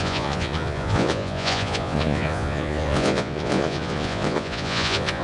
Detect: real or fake fake